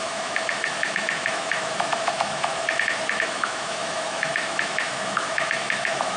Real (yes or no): no